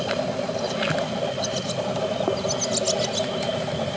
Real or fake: real